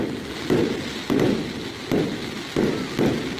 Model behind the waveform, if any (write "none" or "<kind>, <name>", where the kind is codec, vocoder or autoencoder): none